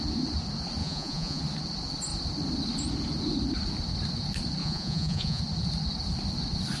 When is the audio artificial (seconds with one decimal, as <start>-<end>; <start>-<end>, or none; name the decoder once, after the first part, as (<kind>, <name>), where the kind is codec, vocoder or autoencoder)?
0.8-1.4 (vocoder, Vocos); 4.6-5.4